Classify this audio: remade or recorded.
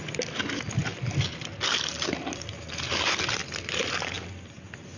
recorded